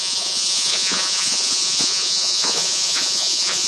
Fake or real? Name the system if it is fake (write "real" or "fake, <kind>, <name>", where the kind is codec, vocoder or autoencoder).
fake, vocoder, Vocos